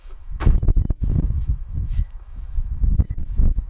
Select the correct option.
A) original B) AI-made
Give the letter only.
B